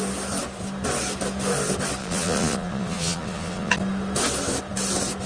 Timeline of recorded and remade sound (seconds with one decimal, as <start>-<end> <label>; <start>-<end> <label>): 0.0-2.0 recorded; 2.0-3.7 remade; 3.7-5.3 recorded